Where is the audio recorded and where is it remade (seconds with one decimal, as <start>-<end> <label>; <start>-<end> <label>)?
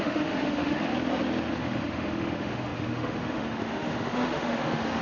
0.0-0.9 remade; 0.9-1.6 recorded; 1.6-5.0 remade